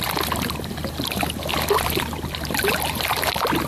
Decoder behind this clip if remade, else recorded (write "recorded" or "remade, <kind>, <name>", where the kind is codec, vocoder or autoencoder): recorded